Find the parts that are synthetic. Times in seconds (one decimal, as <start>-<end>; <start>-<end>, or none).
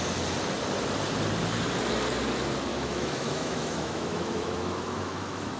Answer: 2.7-5.6